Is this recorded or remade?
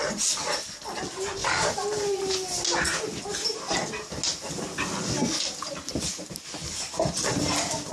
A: recorded